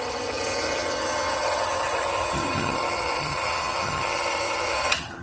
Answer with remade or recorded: remade